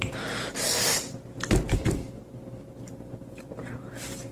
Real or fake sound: fake